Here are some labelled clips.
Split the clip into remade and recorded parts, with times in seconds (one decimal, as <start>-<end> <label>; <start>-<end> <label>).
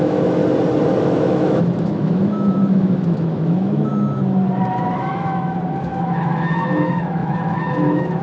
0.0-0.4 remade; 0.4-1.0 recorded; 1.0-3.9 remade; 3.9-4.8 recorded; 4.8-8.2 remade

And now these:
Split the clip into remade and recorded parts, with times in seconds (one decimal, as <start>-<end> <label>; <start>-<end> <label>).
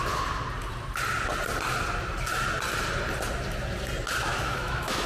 0.0-4.3 recorded; 4.3-5.1 remade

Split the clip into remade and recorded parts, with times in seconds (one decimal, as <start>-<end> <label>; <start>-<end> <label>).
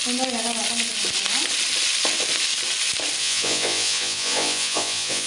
0.0-3.2 recorded; 3.2-5.3 remade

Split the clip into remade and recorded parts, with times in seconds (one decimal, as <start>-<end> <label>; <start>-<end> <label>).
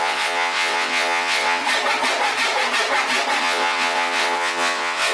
0.0-1.6 remade; 1.6-3.4 recorded; 3.4-5.1 remade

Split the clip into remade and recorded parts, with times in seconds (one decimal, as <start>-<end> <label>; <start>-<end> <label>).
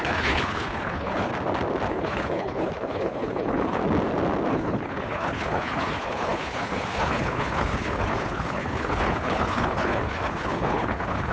0.0-1.3 remade; 1.3-1.9 recorded; 1.9-3.8 remade; 3.8-4.5 recorded; 4.5-11.3 remade